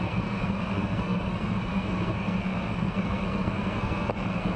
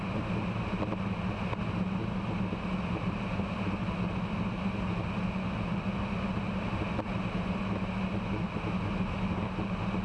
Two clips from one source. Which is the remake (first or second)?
first